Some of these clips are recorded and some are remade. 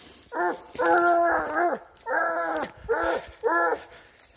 recorded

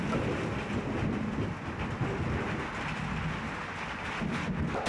recorded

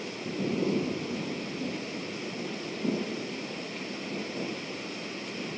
recorded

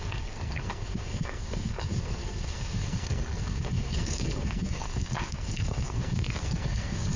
remade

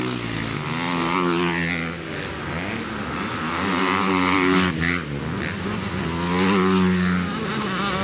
recorded